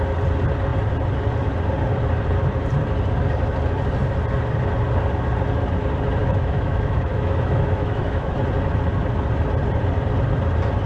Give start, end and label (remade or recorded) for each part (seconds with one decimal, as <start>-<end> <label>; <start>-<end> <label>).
0.0-6.2 recorded; 6.2-8.3 remade; 8.3-10.9 recorded

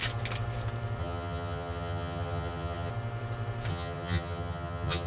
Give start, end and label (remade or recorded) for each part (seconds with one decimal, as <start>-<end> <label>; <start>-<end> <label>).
0.0-1.0 recorded; 1.0-2.9 remade; 2.9-3.7 recorded; 3.7-5.1 remade

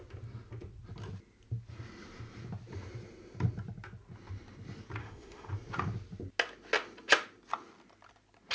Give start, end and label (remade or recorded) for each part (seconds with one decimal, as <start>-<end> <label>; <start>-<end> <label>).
0.0-5.0 recorded; 5.0-5.5 remade; 5.5-8.5 recorded

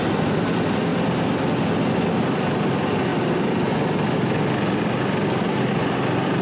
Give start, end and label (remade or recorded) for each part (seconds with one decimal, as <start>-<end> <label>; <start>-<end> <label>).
0.0-6.4 recorded

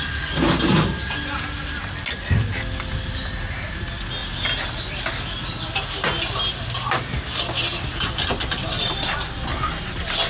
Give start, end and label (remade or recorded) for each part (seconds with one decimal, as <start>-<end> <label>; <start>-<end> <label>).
0.0-4.2 recorded; 4.2-5.0 remade; 5.0-10.3 recorded

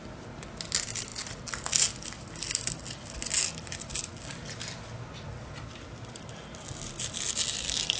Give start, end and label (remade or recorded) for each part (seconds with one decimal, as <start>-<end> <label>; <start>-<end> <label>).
0.0-8.0 recorded